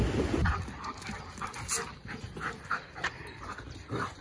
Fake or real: real